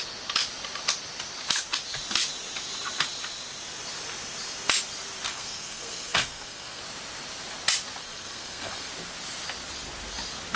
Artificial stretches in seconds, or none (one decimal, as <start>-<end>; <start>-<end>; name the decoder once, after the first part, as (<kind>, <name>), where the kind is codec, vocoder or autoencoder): 5.3-6.8 (codec, SNAC); 8.0-8.9